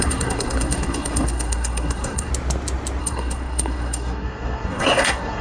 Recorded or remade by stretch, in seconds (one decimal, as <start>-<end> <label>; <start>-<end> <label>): 0.0-2.3 remade; 2.3-3.0 recorded; 3.0-5.4 remade